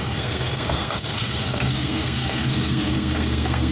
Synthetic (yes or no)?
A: yes